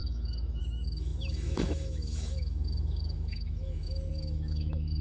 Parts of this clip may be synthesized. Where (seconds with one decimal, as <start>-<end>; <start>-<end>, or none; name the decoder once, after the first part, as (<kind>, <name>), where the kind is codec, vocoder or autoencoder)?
0.0-5.0 (autoencoder, DAC-VAE)